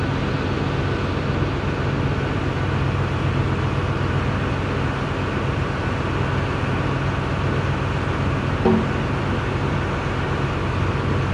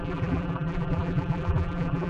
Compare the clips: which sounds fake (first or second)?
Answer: second